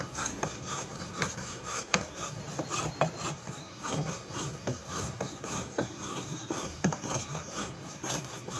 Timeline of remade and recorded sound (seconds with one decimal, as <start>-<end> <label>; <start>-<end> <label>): 0.0-2.4 remade; 2.4-3.3 recorded; 3.3-8.6 remade